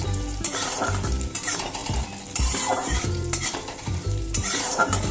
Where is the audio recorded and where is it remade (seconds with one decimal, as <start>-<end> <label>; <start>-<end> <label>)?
0.0-1.8 remade; 1.8-2.4 recorded; 2.4-5.1 remade